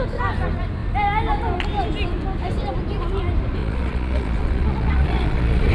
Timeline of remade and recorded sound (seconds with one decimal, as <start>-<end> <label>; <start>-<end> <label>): 0.0-3.6 recorded; 3.6-5.7 remade